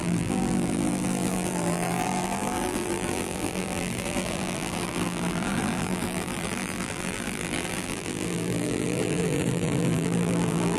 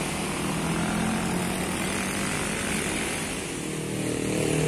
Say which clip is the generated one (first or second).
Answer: first